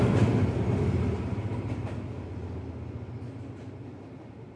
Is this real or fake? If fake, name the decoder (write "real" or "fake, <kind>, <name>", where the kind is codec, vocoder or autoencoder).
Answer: real